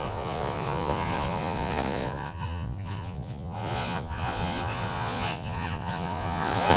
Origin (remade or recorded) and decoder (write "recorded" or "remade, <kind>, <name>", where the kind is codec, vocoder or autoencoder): remade, vocoder, Vocos